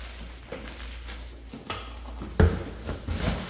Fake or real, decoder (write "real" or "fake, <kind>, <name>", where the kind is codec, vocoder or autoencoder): real